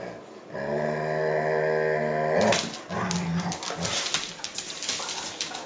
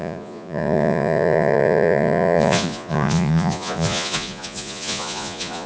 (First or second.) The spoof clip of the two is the second